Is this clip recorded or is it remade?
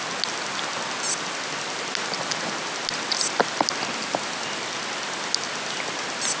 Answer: recorded